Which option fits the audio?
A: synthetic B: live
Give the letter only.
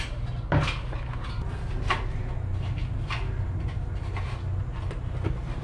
B